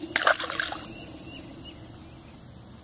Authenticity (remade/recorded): recorded